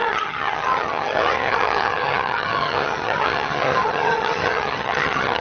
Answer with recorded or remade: remade